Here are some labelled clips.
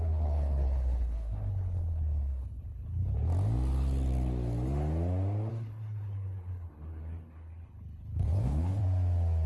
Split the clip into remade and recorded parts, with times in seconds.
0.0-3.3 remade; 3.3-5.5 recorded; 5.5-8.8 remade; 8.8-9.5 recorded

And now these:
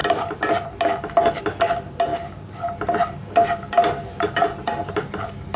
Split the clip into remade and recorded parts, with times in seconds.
0.0-5.6 recorded

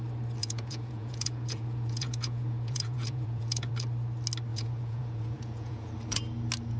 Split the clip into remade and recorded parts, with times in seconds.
0.0-0.4 recorded; 0.4-3.7 remade; 3.7-4.5 recorded; 4.5-6.2 remade; 6.2-6.8 recorded

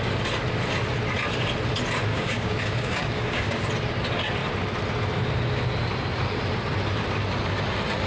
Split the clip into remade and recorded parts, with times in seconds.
0.0-2.1 recorded; 2.1-3.6 remade; 3.6-8.1 recorded